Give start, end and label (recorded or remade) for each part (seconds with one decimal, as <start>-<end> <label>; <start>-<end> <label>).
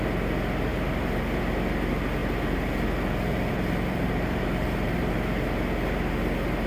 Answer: 0.0-0.7 recorded; 0.7-1.4 remade; 1.4-2.2 recorded; 2.2-5.1 remade; 5.1-6.7 recorded